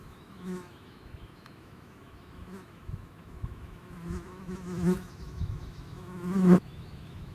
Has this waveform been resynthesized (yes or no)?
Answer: yes